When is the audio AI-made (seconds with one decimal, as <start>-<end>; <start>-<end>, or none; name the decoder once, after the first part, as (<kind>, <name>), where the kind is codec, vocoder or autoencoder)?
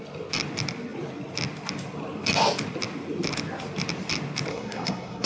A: 4.5-5.3 (codec, SNAC)